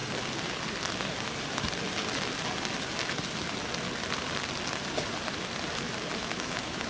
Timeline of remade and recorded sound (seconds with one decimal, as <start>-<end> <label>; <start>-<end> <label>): 0.0-6.1 recorded; 6.1-6.9 remade